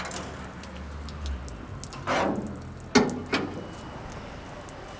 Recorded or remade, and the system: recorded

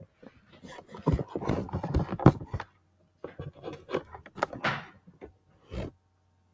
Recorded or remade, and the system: recorded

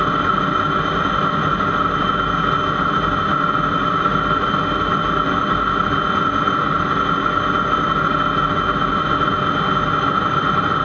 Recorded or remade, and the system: recorded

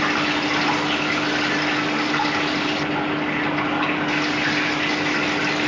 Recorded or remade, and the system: recorded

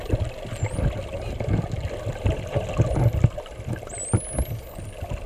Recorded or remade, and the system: recorded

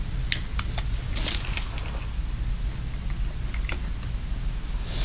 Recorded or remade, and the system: recorded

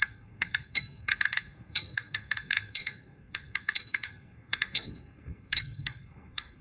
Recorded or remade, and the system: remade, codec, SNAC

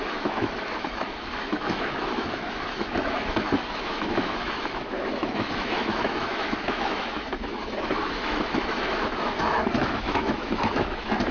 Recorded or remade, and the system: remade, autoencoder, DAC-VAE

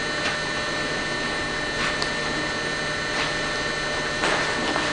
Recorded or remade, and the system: recorded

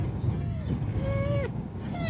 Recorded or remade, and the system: remade, codec, DAC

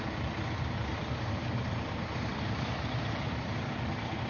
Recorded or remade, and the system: remade, vocoder, BigVGAN v2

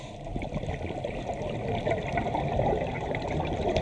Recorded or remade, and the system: recorded